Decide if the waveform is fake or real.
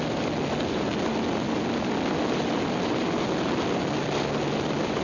real